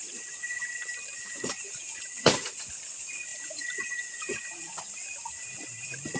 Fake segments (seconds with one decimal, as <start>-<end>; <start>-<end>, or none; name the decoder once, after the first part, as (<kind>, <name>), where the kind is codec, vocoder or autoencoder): 1.2-2.7 (vocoder, Vocos); 3.3-4.9